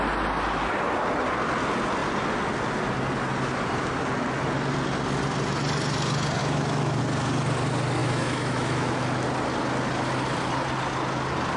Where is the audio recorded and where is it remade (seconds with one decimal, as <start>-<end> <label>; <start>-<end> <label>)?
0.0-6.4 recorded; 6.4-7.0 remade; 7.0-8.0 recorded; 8.0-8.9 remade; 8.9-11.6 recorded